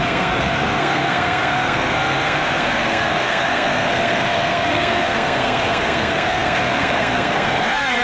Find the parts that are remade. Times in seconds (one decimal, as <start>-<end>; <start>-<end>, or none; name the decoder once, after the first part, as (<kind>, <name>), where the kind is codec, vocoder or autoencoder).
0.0-8.0 (codec, SNAC)